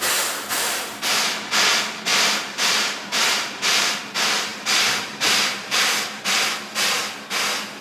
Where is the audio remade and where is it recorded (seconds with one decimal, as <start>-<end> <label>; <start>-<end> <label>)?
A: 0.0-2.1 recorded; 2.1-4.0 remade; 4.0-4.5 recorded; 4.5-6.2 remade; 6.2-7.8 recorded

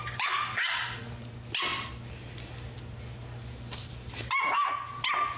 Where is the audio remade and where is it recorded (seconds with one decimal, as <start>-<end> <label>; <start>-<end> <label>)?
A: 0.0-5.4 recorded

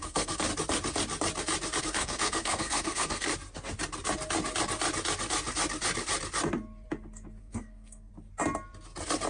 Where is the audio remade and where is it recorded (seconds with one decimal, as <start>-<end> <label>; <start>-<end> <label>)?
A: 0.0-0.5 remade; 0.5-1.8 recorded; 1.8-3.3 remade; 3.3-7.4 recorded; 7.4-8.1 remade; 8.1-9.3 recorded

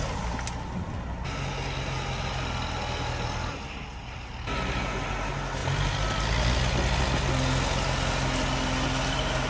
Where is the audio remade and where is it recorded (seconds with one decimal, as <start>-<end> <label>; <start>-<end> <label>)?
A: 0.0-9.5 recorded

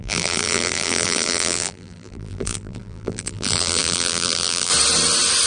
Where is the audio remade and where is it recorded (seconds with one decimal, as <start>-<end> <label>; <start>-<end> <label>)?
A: 0.0-4.7 remade; 4.7-5.5 recorded

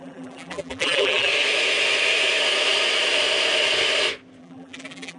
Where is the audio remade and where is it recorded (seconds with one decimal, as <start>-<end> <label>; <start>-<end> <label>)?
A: 0.0-1.3 remade; 1.3-4.4 recorded; 4.4-5.2 remade

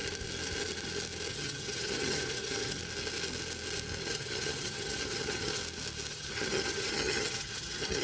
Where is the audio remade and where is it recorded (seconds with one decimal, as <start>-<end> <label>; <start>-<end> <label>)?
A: 0.0-1.3 recorded; 1.3-2.8 remade; 2.8-4.1 recorded; 4.1-5.6 remade; 5.6-6.1 recorded; 6.1-8.0 remade